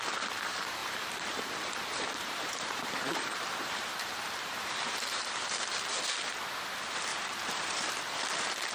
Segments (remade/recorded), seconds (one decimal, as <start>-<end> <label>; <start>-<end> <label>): 0.0-0.8 recorded; 0.8-6.0 remade; 6.0-7.1 recorded; 7.1-7.9 remade; 7.9-8.7 recorded